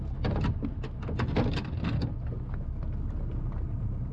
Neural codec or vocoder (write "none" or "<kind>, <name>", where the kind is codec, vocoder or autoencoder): none